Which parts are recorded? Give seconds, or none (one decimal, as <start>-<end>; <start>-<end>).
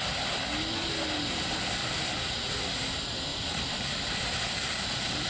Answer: 0.0-5.3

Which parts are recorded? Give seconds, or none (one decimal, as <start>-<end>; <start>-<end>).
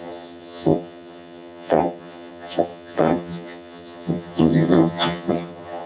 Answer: none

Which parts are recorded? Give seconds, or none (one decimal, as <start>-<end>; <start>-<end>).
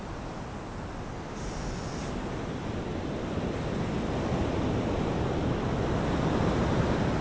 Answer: 0.0-7.2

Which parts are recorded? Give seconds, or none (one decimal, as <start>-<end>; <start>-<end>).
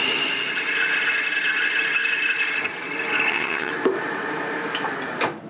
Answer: 0.0-3.3; 3.7-5.5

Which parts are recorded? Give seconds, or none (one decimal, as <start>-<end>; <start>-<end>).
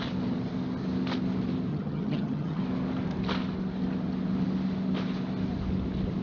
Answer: 0.0-1.7; 2.6-6.2